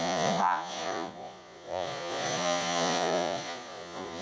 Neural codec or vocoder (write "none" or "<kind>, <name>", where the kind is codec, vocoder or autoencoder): vocoder, Vocos